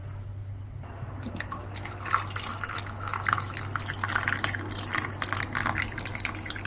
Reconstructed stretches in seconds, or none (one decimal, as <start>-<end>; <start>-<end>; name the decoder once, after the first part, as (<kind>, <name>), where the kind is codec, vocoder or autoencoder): 2.5-3.6 (autoencoder, DAC-VAE)